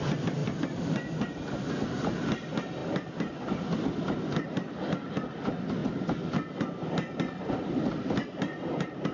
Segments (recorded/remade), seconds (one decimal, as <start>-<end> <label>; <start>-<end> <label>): 0.0-0.4 recorded; 0.4-1.6 remade; 1.6-2.8 recorded; 2.8-4.5 remade; 4.5-9.1 recorded